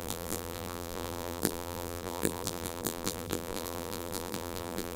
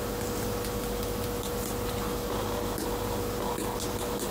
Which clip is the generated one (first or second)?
first